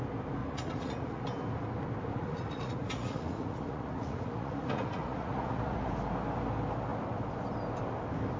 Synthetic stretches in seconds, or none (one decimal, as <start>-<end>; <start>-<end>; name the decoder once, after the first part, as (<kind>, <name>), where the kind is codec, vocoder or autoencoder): 0.4-1.2 (vocoder, Vocos); 2.1-5.9